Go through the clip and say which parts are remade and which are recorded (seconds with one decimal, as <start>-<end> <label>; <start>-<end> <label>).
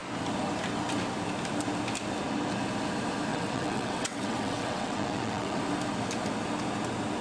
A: 0.0-3.3 recorded; 3.3-5.6 remade; 5.6-7.2 recorded